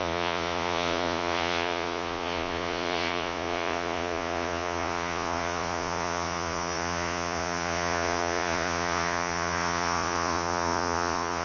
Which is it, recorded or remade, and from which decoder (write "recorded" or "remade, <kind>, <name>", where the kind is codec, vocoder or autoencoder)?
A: remade, vocoder, Vocos